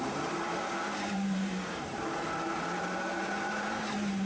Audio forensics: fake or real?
fake